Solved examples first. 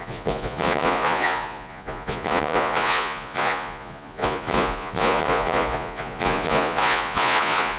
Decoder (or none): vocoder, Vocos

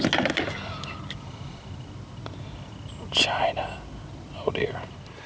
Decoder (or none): none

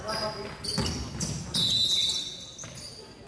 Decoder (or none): none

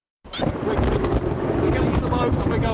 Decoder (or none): none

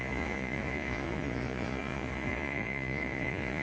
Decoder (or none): vocoder, Vocos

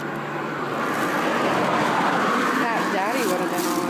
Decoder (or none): none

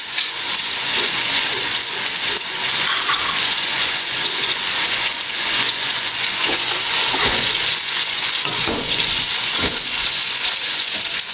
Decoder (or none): vocoder, Vocos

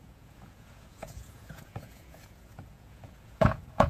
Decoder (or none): vocoder, Vocos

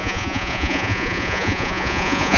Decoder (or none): vocoder, Vocos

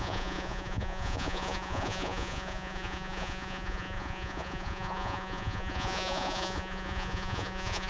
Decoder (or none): vocoder, Vocos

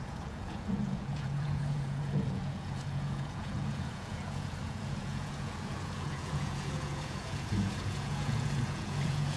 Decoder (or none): vocoder, Vocos